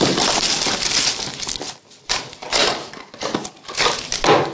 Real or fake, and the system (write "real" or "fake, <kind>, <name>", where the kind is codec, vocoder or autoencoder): real